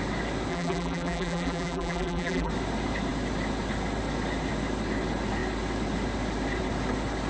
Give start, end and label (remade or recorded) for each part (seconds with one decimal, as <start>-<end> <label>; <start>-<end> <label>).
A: 0.0-0.5 recorded; 0.5-2.5 remade; 2.5-7.3 recorded